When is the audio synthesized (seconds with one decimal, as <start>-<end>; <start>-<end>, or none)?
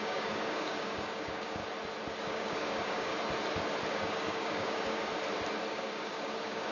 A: 0.0-1.6; 2.2-3.1; 3.9-5.1; 5.7-6.7